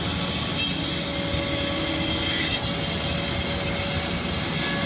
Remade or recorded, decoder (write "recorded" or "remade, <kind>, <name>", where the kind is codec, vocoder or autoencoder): recorded